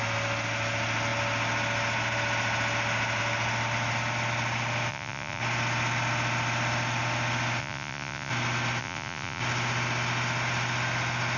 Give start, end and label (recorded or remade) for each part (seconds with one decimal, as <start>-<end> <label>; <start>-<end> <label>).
0.0-4.9 recorded; 4.9-5.4 remade; 5.4-7.6 recorded; 7.6-8.3 remade; 8.3-8.8 recorded; 8.8-9.4 remade; 9.4-11.4 recorded